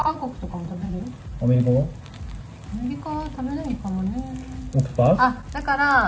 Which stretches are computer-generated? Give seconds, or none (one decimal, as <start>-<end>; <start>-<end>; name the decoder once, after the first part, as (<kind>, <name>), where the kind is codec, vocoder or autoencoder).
0.0-1.0 (vocoder, Vocos)